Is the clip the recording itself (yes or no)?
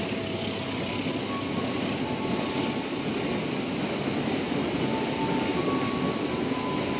yes